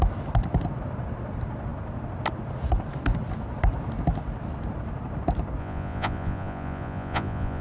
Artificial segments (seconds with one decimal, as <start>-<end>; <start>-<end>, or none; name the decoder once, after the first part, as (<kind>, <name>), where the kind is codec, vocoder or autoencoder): 5.6-7.6 (vocoder, Vocos)